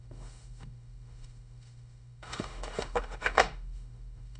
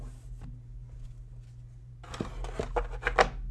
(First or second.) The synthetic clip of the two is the first